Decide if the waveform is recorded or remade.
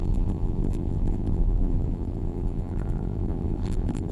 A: remade